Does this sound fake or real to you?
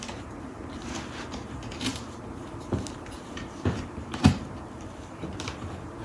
fake